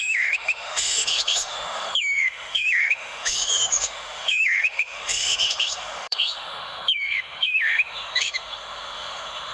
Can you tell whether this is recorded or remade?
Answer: remade